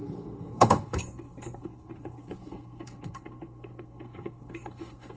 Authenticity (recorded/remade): remade